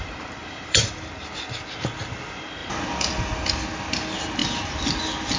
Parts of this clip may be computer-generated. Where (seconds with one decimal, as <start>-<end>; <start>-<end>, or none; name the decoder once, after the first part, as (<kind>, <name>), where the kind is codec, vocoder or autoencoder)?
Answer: 0.4-0.9 (vocoder, BigVGAN v2)